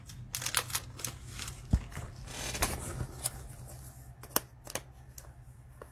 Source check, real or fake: real